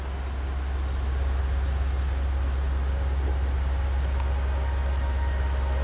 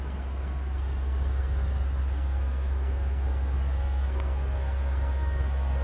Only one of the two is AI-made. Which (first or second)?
second